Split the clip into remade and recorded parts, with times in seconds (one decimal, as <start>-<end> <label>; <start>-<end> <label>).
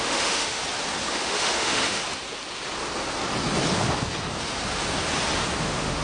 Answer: 0.0-0.6 remade; 0.6-1.1 recorded; 1.1-2.0 remade; 2.0-5.6 recorded; 5.6-6.0 remade